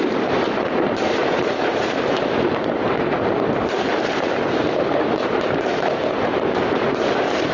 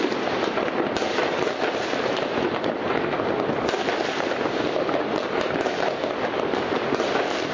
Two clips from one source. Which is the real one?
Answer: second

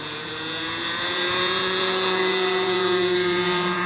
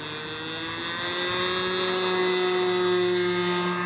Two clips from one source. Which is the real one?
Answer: second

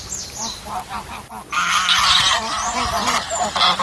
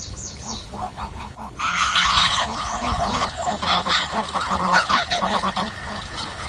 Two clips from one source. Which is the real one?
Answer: first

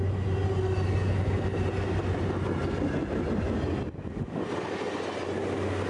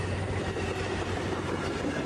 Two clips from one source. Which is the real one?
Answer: first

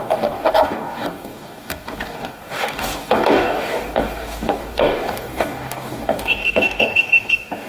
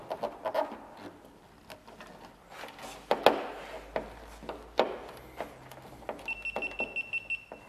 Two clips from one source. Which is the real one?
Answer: second